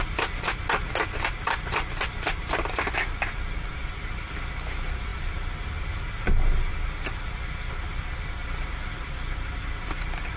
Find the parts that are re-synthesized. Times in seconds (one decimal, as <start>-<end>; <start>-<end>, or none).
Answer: none

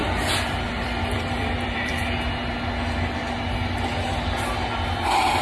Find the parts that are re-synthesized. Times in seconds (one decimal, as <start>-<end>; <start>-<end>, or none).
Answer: 0.0-1.9

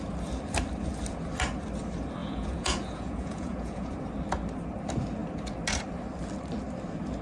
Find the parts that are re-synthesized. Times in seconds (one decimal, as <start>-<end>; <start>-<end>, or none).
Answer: 2.2-3.9

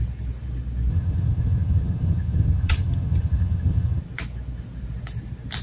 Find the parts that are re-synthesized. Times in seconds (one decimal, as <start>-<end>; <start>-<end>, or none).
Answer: 0.9-4.0

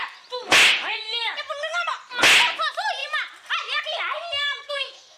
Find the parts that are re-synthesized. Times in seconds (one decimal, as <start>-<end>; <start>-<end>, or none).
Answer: 4.6-5.2

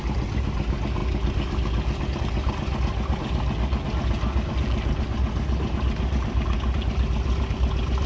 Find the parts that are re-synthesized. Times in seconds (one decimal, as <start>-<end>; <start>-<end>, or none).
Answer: none